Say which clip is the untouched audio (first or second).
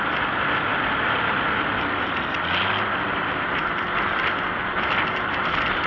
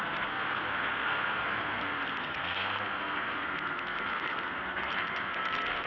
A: first